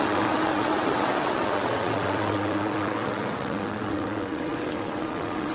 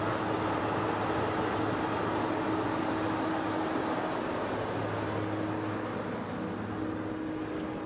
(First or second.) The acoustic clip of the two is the second